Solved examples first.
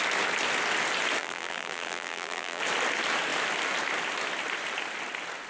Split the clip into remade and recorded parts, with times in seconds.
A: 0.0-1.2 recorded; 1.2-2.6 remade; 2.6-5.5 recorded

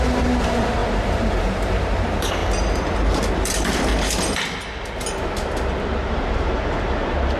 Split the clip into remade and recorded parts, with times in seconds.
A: 0.0-2.4 remade; 2.4-3.3 recorded; 3.3-3.9 remade; 3.9-5.8 recorded; 5.8-7.4 remade

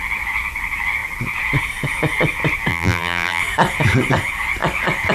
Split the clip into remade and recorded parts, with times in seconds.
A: 0.0-2.7 recorded; 2.7-3.4 remade; 3.4-5.1 recorded

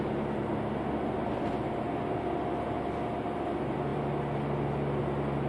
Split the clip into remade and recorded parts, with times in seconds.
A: 0.0-5.5 recorded